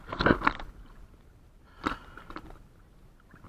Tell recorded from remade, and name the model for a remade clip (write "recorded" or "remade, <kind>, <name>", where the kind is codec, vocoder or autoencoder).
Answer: recorded